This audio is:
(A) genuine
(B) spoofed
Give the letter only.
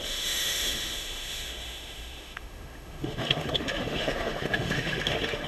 B